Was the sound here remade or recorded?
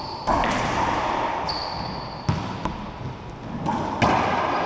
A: recorded